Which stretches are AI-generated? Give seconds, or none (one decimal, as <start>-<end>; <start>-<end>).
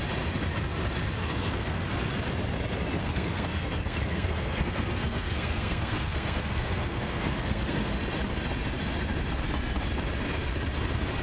1.2-1.8; 3.0-7.9